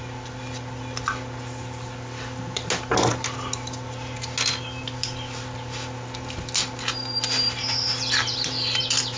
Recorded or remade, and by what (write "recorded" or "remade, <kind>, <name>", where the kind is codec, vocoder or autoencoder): recorded